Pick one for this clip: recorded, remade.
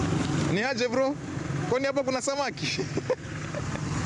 recorded